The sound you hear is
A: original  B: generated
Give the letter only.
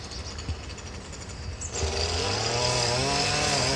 A